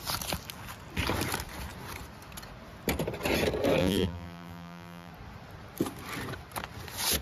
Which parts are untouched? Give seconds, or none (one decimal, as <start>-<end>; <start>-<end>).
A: 0.0-3.8; 5.1-7.2